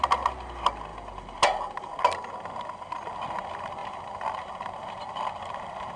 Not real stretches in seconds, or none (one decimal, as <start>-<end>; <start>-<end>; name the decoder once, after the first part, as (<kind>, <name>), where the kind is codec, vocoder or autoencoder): none